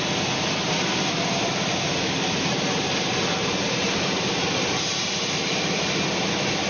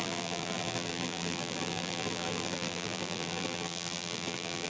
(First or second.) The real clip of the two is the first